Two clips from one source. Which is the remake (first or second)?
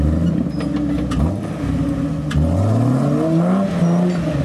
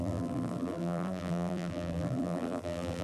second